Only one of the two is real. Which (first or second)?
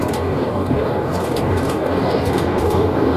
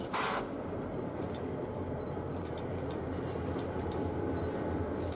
second